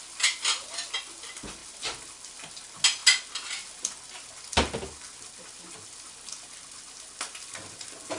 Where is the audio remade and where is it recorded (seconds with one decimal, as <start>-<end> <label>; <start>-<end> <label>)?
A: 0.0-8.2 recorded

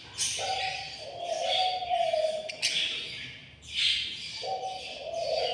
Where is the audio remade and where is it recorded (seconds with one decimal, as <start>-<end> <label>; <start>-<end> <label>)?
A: 0.0-5.5 recorded

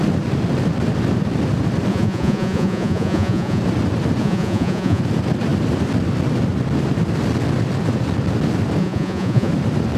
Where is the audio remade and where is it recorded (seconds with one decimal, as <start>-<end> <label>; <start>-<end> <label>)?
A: 0.0-1.9 recorded; 1.9-3.6 remade; 3.6-4.2 recorded; 4.2-5.0 remade; 5.0-8.8 recorded; 8.8-9.5 remade; 9.5-10.0 recorded